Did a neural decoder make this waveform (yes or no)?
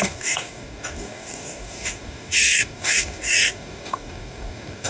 yes